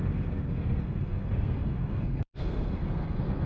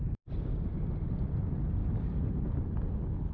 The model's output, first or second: first